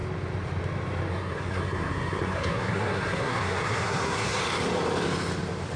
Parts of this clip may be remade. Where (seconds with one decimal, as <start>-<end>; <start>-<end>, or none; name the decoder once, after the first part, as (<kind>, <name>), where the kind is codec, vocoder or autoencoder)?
1.1-4.4 (codec, SNAC)